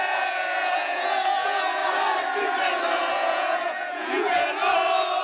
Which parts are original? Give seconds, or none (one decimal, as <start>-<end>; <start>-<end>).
1.8-3.1; 4.6-5.2

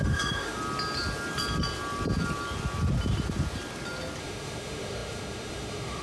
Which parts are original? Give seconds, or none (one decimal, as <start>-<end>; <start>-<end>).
0.6-4.2

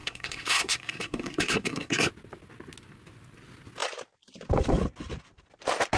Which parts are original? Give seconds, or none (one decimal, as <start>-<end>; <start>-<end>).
2.1-6.0

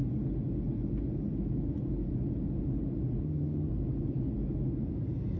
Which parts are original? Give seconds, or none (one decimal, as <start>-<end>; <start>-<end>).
0.0-3.2; 3.7-5.4